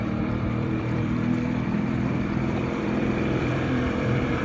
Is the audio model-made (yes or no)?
yes